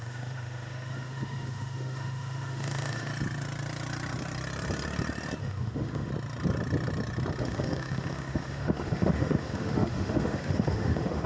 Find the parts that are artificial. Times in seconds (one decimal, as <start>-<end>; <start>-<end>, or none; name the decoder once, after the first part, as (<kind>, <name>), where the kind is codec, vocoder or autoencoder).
0.0-3.1 (autoencoder, DAC-VAE); 5.4-6.1; 7.4-11.3